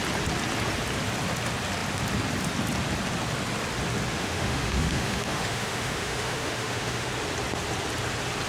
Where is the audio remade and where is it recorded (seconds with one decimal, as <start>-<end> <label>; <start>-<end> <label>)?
0.0-4.2 recorded; 4.2-7.1 remade; 7.1-8.5 recorded